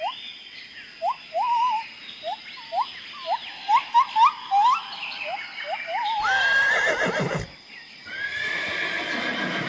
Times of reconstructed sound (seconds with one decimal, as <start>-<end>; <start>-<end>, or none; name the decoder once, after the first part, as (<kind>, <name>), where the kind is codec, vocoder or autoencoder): none